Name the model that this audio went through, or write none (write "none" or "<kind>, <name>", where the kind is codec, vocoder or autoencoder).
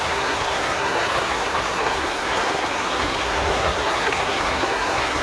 codec, SNAC